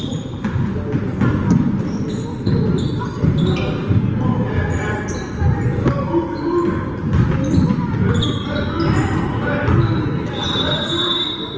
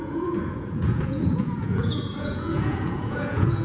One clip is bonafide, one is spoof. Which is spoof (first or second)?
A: second